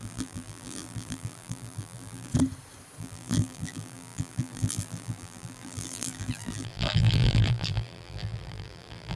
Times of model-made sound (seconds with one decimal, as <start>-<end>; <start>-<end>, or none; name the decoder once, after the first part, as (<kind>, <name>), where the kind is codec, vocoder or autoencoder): 0.0-2.3 (vocoder, BigVGAN v2); 3.0-9.2